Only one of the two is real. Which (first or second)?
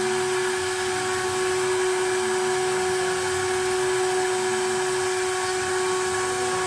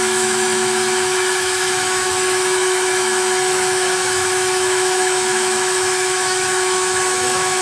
first